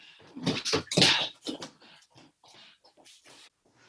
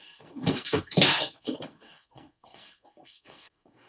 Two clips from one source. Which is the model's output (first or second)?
second